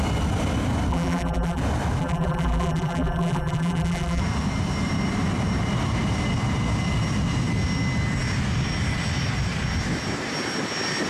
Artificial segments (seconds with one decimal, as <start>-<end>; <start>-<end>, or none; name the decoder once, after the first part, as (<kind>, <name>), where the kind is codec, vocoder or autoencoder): 0.9-1.6 (vocoder, BigVGAN v2); 2.0-4.2